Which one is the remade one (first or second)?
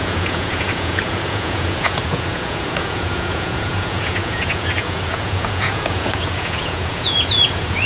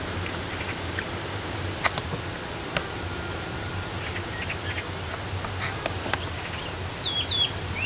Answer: first